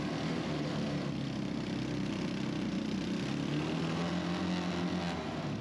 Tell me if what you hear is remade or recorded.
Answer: recorded